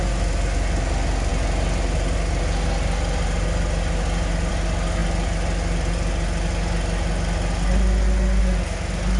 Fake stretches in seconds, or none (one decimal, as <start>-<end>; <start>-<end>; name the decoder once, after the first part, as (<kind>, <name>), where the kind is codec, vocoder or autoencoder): none